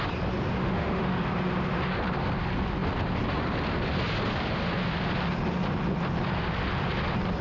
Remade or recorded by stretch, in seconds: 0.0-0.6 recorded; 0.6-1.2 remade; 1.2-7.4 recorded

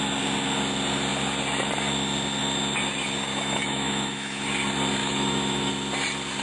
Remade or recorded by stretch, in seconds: 0.0-3.3 recorded; 3.3-4.5 remade; 4.5-5.0 recorded; 5.0-5.7 remade; 5.7-6.4 recorded

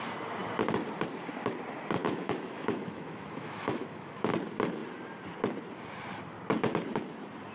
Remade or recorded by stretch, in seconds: 0.0-2.0 recorded; 2.0-4.3 remade; 4.3-7.5 recorded

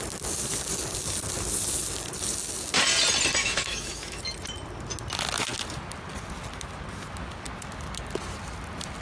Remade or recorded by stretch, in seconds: 0.0-3.4 recorded; 3.4-4.2 remade; 4.2-9.0 recorded

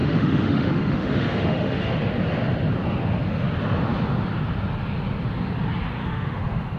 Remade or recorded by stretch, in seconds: 0.0-1.9 remade; 1.9-6.0 recorded; 6.0-6.8 remade

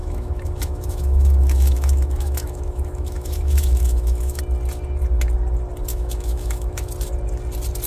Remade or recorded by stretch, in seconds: 0.0-4.4 remade; 4.4-5.9 recorded; 5.9-6.9 remade; 6.9-7.9 recorded

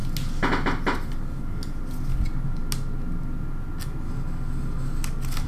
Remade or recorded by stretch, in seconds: 0.0-5.5 recorded